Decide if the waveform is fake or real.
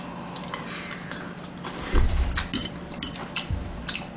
real